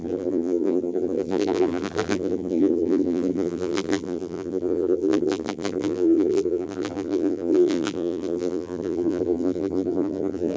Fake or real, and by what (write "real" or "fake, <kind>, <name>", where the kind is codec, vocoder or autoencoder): fake, vocoder, BigVGAN v2